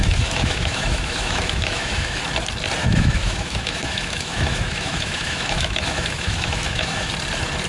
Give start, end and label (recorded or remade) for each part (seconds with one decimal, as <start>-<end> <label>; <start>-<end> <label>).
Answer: 0.0-2.2 remade; 2.2-2.8 recorded; 2.8-7.1 remade; 7.1-7.7 recorded